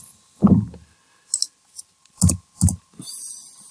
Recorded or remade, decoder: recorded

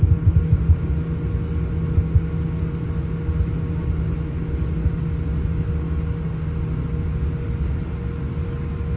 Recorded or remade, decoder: recorded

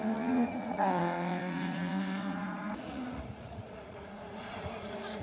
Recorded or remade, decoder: remade, vocoder, Vocos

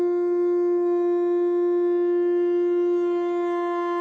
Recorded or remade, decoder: recorded